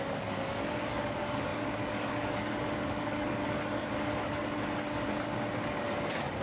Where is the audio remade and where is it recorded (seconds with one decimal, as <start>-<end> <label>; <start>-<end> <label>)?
0.0-4.4 remade; 4.4-5.5 recorded; 5.5-6.4 remade